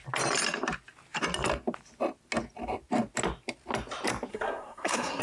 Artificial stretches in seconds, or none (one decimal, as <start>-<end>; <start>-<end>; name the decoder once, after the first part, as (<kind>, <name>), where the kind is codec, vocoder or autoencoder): 4.3-5.2 (codec, SNAC)